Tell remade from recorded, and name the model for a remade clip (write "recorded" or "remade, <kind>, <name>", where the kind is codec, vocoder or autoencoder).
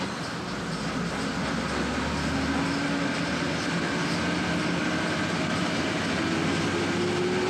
recorded